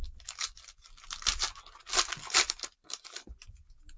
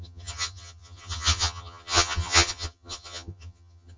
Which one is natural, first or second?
first